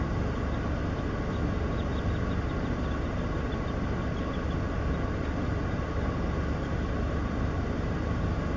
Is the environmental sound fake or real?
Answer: real